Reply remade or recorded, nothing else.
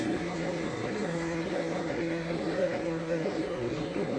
remade